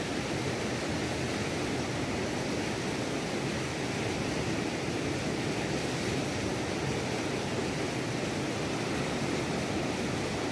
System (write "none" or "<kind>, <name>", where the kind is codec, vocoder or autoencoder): none